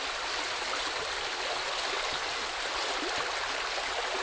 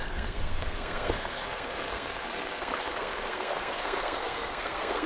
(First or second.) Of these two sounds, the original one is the first